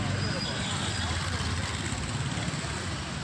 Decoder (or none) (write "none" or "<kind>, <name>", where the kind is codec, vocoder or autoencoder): none